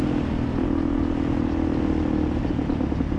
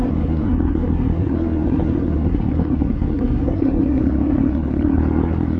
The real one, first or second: first